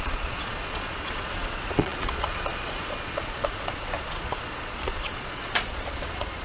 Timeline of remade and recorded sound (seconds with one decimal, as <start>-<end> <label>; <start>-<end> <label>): 0.0-6.4 remade